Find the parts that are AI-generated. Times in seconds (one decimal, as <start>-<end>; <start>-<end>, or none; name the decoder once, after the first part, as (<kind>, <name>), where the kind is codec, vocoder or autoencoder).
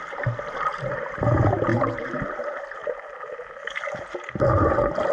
1.7-2.2 (vocoder, BigVGAN v2); 2.8-3.5